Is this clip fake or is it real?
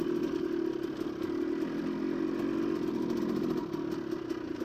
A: real